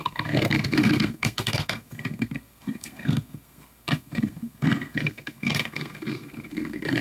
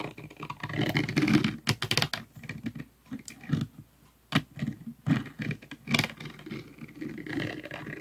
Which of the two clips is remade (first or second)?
first